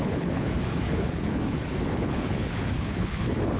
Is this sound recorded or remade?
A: remade